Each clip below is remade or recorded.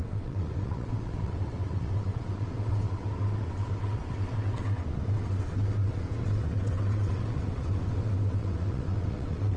remade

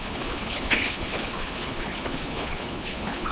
remade